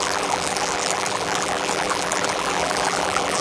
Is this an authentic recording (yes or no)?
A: no